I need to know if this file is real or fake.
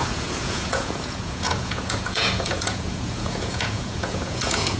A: fake